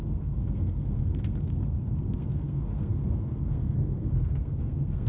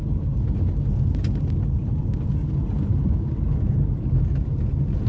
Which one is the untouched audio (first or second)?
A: second